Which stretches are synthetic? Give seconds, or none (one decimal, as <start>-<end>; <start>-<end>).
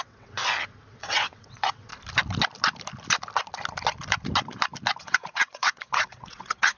0.0-0.4; 0.9-1.9; 5.0-6.8